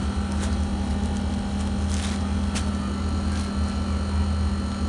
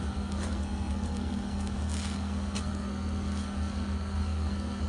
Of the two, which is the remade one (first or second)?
second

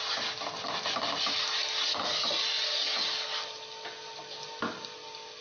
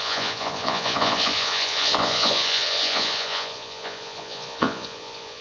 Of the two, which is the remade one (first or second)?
second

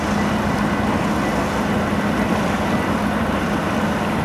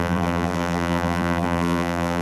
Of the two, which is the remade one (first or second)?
second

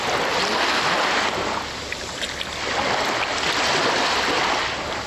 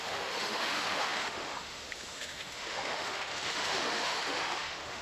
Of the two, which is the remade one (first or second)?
second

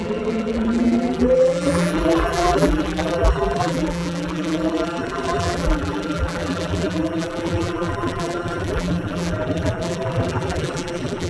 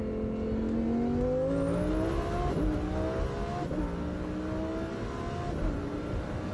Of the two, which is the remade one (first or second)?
first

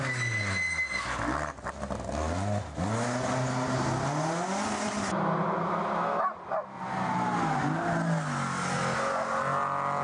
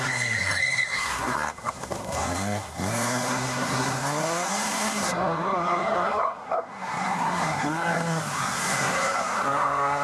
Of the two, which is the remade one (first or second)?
second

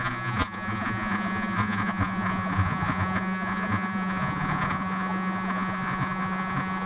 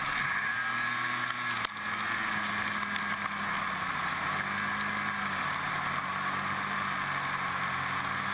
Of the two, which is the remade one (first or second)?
first